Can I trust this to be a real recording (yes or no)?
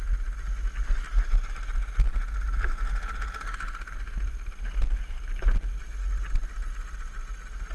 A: yes